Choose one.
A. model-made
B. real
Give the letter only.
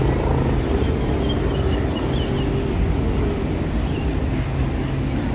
B